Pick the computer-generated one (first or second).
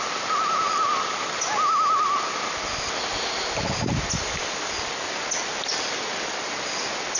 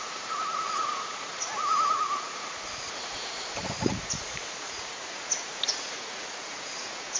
second